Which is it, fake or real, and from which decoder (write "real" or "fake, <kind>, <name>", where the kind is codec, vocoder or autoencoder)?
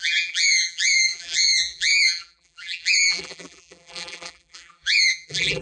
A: fake, vocoder, BigVGAN v2